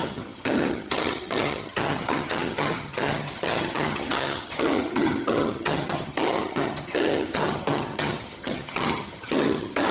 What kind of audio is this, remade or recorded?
remade